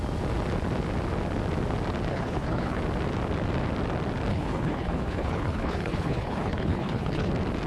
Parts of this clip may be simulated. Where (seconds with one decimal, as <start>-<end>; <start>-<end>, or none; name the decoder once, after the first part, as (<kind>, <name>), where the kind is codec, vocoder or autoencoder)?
2.1-2.8 (codec, HILCodec); 4.3-7.3